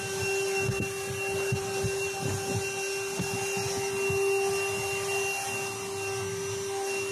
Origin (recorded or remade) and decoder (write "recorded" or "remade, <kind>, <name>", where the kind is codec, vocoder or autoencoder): recorded